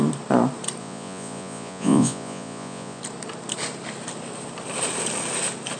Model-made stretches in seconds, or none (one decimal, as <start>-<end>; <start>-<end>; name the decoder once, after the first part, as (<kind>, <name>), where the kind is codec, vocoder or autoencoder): 0.8-3.0 (vocoder, Vocos)